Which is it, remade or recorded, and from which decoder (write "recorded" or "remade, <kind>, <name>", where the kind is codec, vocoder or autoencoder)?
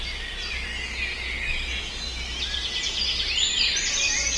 recorded